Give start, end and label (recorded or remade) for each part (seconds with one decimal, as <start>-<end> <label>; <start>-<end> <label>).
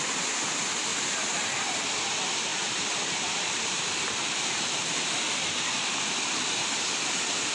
0.0-0.9 recorded; 0.9-2.1 remade; 2.1-2.5 recorded; 2.5-5.2 remade; 5.2-7.5 recorded